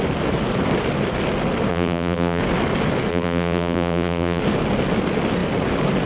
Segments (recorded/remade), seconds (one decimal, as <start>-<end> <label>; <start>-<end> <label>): 0.0-1.7 recorded; 1.7-2.4 remade; 2.4-3.1 recorded; 3.1-4.4 remade; 4.4-6.1 recorded